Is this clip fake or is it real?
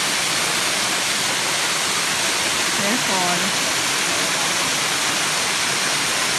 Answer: real